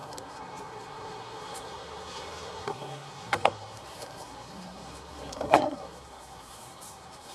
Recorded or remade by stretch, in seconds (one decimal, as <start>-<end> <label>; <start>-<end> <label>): 0.0-7.3 remade